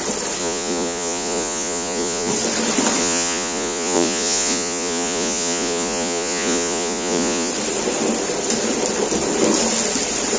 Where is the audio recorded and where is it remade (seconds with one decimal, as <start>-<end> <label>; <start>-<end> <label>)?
0.0-0.4 recorded; 0.4-2.3 remade; 2.3-3.0 recorded; 3.0-7.5 remade; 7.5-10.4 recorded